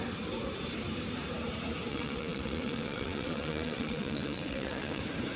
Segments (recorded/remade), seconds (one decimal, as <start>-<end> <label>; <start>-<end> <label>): 0.0-1.9 recorded; 1.9-5.0 remade; 5.0-5.4 recorded

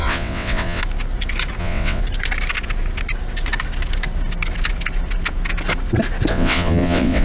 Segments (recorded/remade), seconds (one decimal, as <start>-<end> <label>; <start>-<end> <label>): 0.0-0.8 remade; 0.8-1.6 recorded; 1.6-2.0 remade; 2.0-6.3 recorded; 6.3-7.2 remade